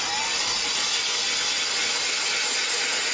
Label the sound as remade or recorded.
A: recorded